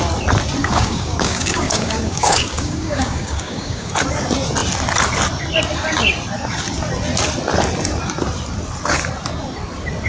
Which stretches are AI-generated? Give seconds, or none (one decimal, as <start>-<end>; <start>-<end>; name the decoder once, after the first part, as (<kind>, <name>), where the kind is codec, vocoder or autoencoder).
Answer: 0.6-3.9 (codec, DAC)